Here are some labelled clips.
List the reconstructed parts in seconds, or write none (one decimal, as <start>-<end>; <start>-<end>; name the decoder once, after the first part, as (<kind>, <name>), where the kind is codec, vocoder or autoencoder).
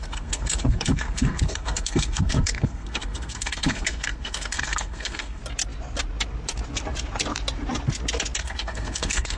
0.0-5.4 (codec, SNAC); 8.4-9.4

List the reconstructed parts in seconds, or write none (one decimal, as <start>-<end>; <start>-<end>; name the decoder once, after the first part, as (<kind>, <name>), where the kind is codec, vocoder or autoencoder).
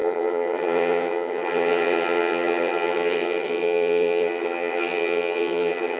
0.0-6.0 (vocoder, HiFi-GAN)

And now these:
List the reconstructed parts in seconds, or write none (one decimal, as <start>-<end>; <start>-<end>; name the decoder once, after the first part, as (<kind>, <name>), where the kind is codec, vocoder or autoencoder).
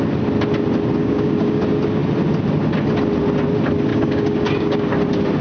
1.0-1.6 (codec, DAC); 3.9-4.9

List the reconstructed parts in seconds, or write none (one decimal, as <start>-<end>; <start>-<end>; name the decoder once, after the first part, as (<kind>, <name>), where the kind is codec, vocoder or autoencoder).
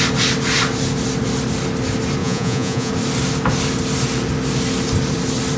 2.2-2.9 (vocoder, Vocos)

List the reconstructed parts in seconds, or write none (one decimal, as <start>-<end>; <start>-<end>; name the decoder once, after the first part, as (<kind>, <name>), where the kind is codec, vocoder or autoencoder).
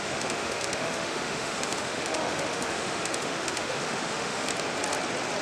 0.0-4.5 (autoencoder, DAC-VAE)